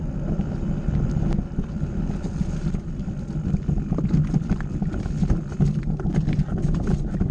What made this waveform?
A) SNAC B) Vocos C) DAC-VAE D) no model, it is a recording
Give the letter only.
D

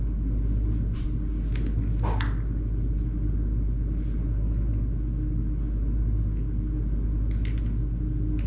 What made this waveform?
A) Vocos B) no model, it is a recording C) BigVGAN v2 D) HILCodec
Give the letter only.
B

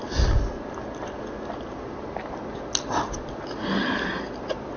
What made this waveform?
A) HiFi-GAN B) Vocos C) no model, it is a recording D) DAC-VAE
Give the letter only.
C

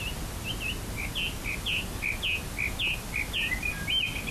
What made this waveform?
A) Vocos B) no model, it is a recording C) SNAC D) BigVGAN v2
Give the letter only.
B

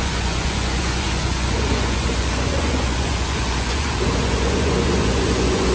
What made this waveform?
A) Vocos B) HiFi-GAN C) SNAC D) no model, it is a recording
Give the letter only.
A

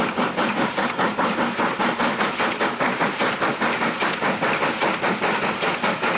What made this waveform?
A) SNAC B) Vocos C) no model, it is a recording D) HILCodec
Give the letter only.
C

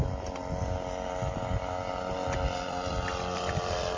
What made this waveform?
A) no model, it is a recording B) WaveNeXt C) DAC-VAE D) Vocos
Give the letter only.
A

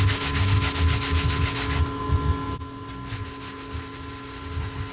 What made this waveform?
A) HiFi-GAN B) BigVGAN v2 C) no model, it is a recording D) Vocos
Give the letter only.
C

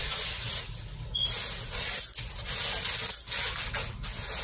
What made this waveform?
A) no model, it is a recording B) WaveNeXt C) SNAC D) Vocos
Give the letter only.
A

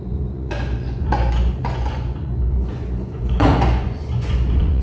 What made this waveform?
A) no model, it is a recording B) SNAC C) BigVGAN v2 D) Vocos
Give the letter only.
D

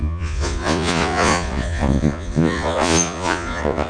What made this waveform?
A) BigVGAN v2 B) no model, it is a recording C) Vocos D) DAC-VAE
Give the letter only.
C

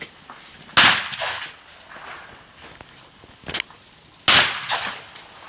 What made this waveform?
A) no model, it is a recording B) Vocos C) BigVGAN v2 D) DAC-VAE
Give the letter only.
A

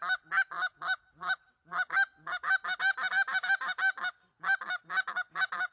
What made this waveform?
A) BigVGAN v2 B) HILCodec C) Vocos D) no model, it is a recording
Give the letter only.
D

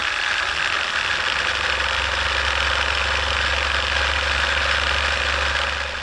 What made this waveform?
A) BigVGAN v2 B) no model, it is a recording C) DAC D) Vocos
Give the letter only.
B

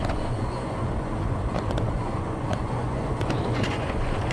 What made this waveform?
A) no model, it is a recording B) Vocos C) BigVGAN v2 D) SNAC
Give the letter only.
B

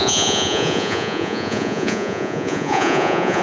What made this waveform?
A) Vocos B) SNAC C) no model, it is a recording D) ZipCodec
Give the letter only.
A